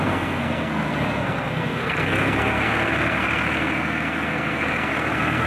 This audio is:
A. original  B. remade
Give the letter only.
B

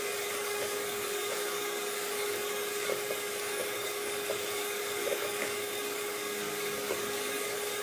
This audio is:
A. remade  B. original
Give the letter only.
A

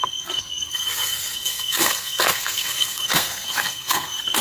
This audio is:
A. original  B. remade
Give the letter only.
B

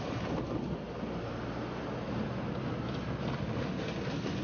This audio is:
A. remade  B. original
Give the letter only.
B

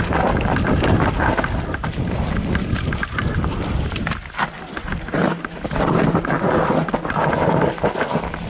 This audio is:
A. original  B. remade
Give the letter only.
A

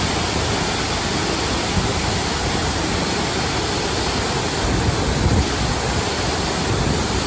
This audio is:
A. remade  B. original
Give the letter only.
B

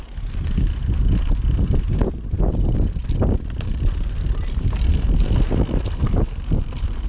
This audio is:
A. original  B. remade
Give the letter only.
A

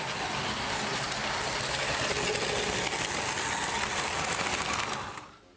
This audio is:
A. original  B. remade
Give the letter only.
A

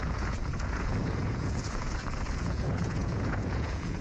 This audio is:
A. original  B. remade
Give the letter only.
B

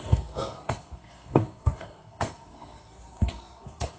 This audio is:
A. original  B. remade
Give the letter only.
B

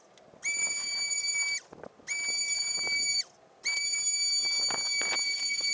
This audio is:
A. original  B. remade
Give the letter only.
A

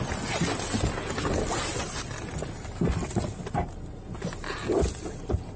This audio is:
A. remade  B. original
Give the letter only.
B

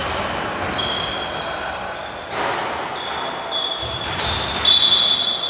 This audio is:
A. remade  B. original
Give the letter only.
B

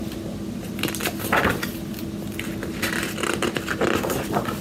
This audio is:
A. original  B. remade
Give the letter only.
A